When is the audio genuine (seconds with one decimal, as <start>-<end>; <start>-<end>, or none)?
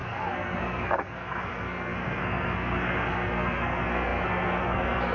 none